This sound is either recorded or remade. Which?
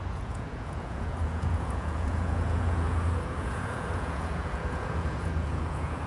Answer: remade